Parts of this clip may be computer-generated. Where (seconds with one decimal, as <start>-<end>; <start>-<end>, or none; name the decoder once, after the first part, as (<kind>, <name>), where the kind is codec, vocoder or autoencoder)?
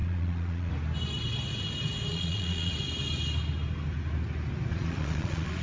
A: 0.0-0.7 (vocoder, Vocos); 2.1-2.7; 4.7-5.6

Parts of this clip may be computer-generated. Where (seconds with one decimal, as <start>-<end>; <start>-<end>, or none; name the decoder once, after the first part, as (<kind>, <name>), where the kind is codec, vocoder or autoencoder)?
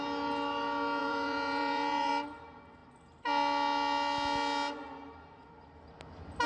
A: 1.0-2.1 (vocoder, Vocos)